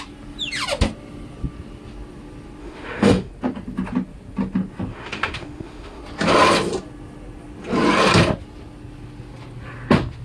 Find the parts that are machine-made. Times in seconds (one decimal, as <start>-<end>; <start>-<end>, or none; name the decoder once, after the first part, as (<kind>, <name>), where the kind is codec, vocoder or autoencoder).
2.6-3.3 (autoencoder, DAC-VAE); 4.9-6.0